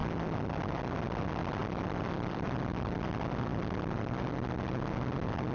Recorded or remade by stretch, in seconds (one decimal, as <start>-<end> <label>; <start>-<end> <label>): 0.0-0.8 remade; 0.8-1.6 recorded; 1.6-2.9 remade; 2.9-3.5 recorded; 3.5-4.6 remade; 4.6-5.5 recorded